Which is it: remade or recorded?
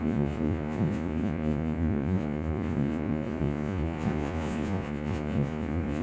remade